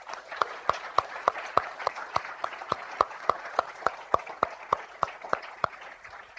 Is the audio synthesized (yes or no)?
yes